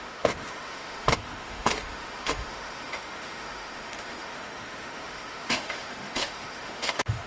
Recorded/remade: remade